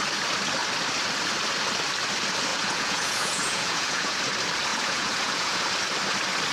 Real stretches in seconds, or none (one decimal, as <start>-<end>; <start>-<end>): 0.0-2.5; 4.2-4.7; 5.6-6.5